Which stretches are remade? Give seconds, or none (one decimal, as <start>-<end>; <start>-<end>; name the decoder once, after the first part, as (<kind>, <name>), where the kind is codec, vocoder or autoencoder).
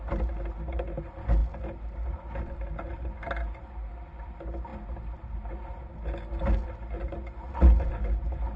none